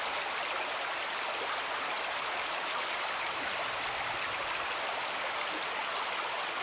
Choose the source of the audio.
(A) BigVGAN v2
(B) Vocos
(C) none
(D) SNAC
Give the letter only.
C